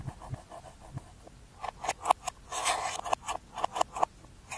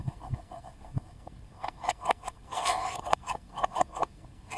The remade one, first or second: second